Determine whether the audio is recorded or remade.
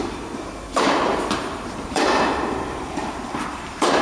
remade